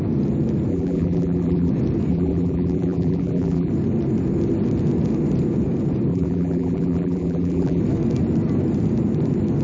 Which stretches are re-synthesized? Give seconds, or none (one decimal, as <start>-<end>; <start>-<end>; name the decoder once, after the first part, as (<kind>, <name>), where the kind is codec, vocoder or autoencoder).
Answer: 0.7-1.7 (vocoder, BigVGAN v2); 2.1-3.7; 6.1-7.8